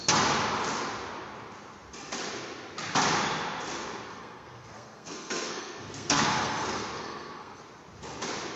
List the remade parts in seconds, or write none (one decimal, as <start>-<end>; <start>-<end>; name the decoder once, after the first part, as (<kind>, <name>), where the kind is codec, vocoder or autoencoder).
4.1-7.6 (codec, SNAC)